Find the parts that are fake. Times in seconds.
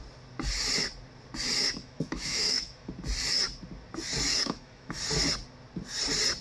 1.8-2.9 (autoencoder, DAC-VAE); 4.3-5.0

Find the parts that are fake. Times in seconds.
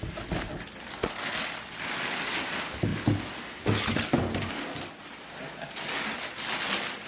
none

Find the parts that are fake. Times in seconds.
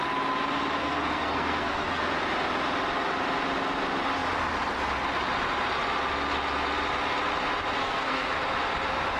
0.8-2.0 (codec, SNAC); 7.8-8.4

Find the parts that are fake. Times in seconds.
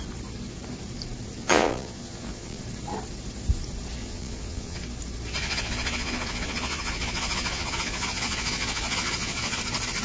1.4-2.6 (vocoder, Vocos); 4.0-4.8; 5.4-9.6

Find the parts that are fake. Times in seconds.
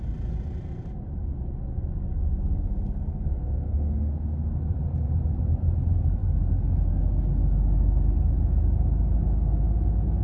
3.1-4.6 (codec, SNAC)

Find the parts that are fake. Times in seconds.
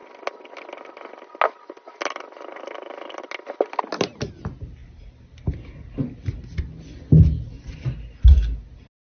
none